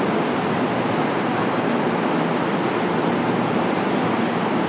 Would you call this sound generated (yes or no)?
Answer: no